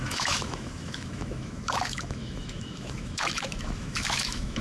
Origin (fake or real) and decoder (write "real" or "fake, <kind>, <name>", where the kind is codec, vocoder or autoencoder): fake, autoencoder, DAC-VAE